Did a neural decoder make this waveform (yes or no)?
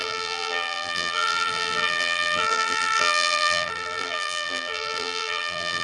yes